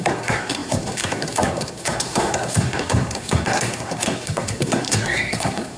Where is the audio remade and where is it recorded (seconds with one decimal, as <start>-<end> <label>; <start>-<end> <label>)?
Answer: 0.0-5.8 remade